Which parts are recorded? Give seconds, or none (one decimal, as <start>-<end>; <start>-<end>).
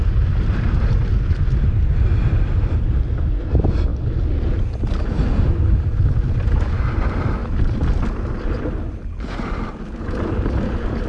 0.0-11.1